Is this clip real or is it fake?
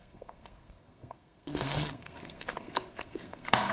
fake